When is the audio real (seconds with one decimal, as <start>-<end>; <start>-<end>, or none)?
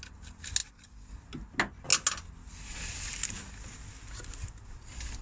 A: 0.0-5.2